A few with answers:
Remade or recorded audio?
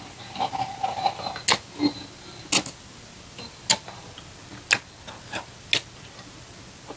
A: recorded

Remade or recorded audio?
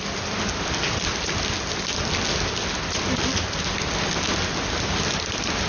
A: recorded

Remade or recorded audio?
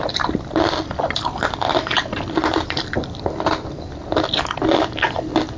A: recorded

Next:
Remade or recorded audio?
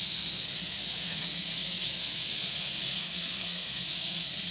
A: remade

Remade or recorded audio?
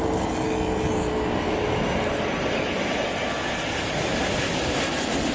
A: recorded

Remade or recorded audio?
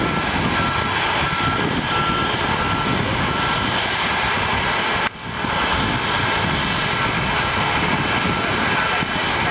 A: recorded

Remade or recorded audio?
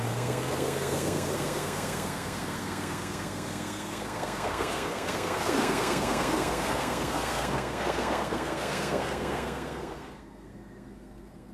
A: remade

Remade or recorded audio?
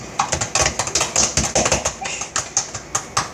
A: recorded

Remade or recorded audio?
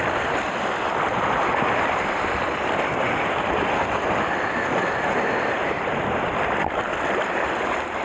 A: recorded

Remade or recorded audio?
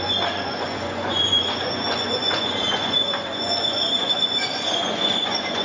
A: remade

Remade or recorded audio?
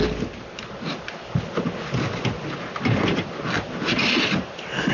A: recorded